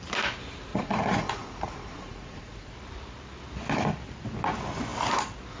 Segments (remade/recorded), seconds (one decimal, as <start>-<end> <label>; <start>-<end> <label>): 0.0-0.7 recorded; 0.7-2.7 remade; 2.7-5.6 recorded